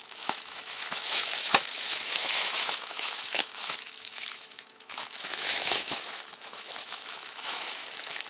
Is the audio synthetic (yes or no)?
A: yes